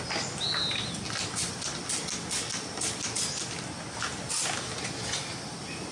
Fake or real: real